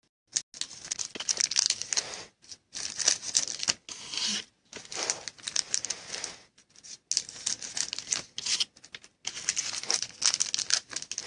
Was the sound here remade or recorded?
recorded